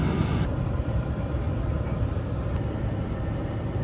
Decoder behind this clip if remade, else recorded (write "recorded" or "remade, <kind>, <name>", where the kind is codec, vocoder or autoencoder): recorded